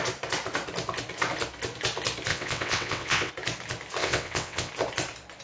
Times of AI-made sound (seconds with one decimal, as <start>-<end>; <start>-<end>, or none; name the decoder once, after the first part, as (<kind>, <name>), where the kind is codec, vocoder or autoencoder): 2.3-3.3 (vocoder, WaveNeXt); 4.0-4.7